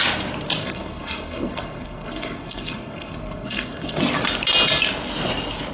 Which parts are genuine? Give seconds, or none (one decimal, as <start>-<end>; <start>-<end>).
0.0-0.6; 4.0-5.7